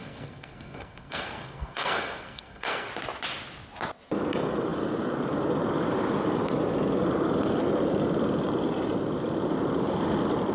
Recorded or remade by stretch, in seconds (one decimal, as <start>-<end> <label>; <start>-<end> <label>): 0.0-2.9 remade; 2.9-10.5 recorded